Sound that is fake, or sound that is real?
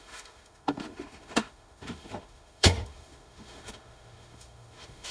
fake